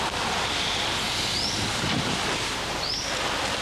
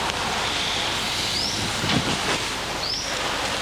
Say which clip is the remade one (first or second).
first